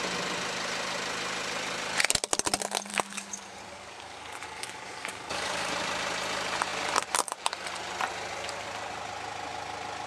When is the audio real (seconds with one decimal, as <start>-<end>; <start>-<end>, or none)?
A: 0.0-2.9; 5.7-10.1